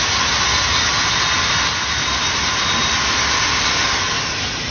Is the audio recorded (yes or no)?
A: yes